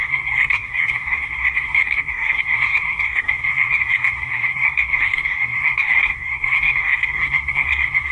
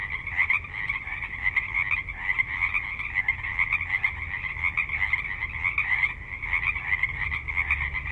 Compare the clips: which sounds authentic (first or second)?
second